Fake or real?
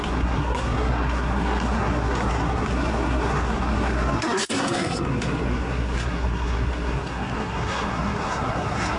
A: fake